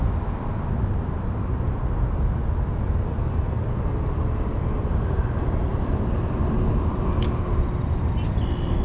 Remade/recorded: recorded